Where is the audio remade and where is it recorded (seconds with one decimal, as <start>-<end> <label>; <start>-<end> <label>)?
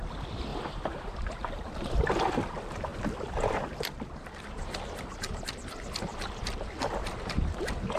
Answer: 0.0-0.5 recorded; 0.5-2.2 remade; 2.2-8.0 recorded